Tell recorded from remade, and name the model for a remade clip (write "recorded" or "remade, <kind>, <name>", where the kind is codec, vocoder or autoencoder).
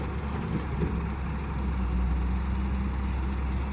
recorded